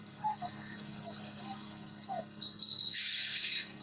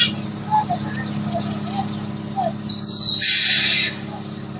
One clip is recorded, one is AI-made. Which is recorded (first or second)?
second